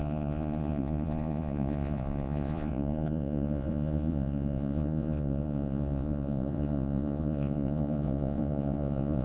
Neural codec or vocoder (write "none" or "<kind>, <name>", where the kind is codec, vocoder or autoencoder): vocoder, Vocos